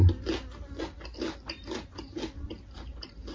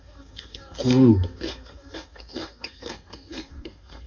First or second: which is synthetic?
second